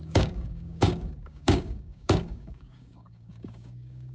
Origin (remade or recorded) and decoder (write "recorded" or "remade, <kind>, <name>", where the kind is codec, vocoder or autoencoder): remade, codec, DAC